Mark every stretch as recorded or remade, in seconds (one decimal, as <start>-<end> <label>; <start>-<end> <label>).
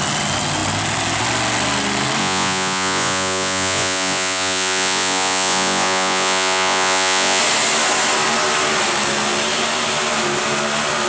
0.0-2.2 recorded; 2.2-7.4 remade; 7.4-11.1 recorded